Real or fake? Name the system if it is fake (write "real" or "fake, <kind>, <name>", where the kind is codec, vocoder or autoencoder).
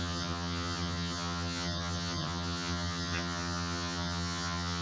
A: fake, vocoder, HiFi-GAN